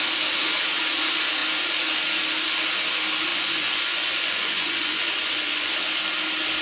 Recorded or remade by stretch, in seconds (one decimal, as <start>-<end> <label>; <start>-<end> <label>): 0.0-3.3 recorded; 3.3-5.7 remade; 5.7-6.6 recorded